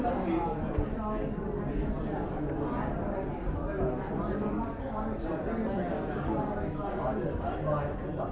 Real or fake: real